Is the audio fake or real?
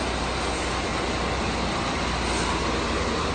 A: real